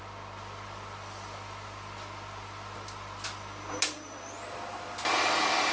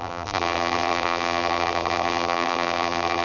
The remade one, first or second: second